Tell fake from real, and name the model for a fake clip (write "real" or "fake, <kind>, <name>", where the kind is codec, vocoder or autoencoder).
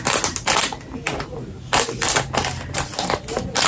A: real